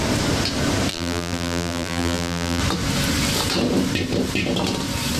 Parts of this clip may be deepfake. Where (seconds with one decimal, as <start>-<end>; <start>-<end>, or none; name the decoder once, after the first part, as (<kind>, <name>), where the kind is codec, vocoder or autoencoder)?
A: 0.9-2.6 (vocoder, BigVGAN v2)

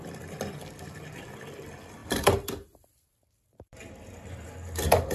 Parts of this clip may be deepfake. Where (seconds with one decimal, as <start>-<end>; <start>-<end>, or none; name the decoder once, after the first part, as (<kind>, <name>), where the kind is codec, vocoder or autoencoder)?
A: 0.0-5.1 (vocoder, BigVGAN v2)

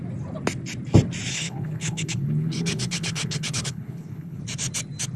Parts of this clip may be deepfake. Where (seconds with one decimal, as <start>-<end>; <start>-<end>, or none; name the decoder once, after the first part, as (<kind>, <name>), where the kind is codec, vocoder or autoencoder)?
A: 1.3-4.4 (codec, HILCodec)

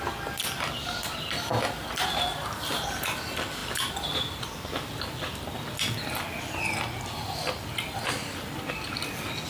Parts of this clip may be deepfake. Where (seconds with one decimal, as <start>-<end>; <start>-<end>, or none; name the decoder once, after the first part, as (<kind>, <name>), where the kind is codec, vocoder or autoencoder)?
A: 3.6-8.7 (vocoder, BigVGAN v2)

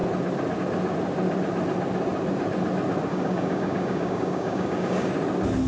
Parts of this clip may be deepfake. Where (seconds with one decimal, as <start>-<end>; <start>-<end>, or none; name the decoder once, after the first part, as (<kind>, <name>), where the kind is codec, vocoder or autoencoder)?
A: 3.1-5.1 (codec, DAC)

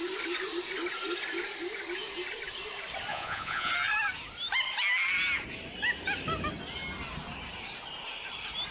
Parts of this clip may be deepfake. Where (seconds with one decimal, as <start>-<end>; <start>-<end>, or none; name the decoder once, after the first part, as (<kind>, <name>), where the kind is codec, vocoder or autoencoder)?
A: 3.1-3.7 (vocoder, Vocos)

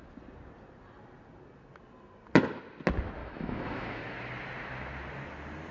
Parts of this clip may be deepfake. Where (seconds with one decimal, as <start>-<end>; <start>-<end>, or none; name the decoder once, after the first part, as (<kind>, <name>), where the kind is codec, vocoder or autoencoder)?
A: 3.2-4.0 (autoencoder, DAC-VAE)